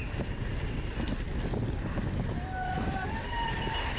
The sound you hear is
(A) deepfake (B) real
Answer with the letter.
B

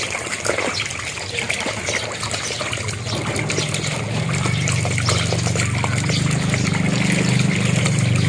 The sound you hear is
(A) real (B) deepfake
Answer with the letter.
A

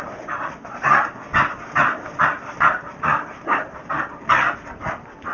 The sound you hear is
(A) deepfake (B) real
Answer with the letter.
B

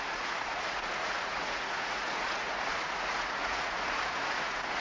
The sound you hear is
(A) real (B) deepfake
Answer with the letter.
B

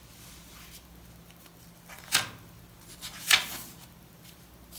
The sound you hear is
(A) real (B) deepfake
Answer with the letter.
A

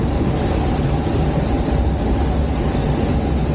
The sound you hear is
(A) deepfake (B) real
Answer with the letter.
B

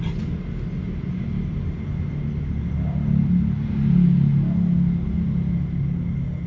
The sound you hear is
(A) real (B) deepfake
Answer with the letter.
A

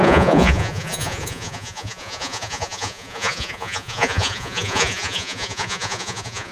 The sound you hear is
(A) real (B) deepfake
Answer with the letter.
B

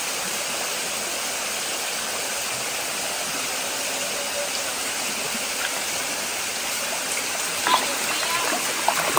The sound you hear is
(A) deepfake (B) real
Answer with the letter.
B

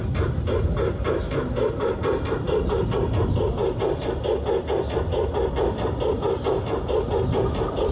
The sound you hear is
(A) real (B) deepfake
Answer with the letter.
A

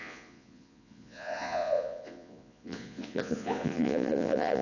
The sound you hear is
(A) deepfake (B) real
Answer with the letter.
A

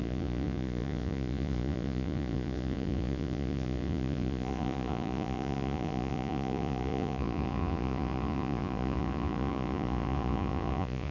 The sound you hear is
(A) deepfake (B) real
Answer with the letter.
A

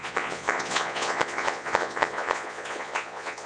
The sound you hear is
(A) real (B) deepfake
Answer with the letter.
B